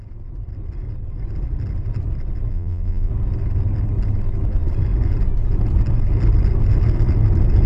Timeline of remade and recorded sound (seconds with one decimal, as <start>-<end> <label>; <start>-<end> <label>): 0.0-2.5 recorded; 2.5-3.1 remade; 3.1-7.7 recorded